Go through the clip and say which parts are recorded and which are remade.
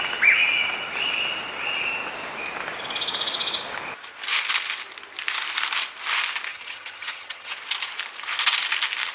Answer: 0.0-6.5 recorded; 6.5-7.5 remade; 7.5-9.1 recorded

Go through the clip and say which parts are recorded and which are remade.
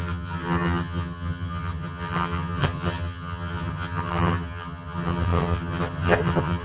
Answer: 0.0-6.6 remade